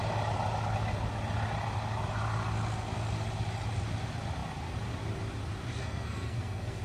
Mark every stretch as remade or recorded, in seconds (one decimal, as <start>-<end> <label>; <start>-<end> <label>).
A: 0.0-5.8 recorded; 5.8-6.8 remade